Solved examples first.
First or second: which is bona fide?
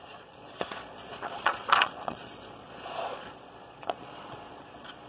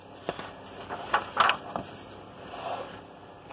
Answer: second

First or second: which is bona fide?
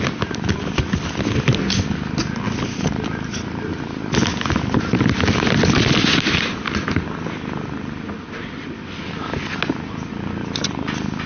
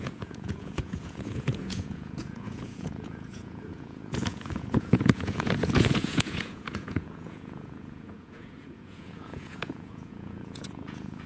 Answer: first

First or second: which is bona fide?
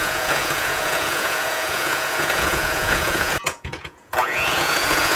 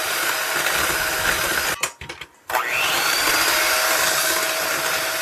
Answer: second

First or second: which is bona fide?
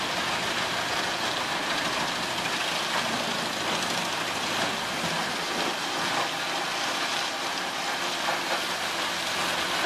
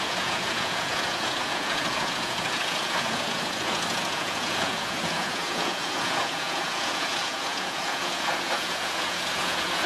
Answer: first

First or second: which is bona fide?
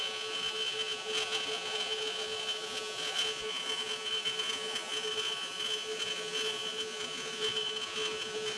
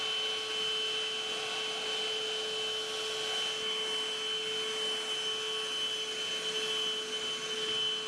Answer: second